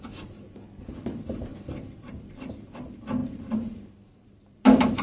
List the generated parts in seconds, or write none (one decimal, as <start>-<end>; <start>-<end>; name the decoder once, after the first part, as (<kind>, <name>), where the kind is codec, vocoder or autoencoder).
0.0-5.0 (vocoder, BigVGAN v2)